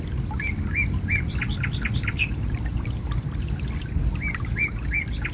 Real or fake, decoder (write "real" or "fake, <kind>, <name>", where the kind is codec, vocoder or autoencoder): real